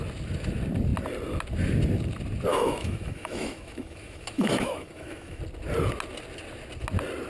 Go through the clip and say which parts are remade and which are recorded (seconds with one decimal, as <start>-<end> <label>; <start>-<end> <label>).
0.0-2.5 recorded; 2.5-5.4 remade; 5.4-7.3 recorded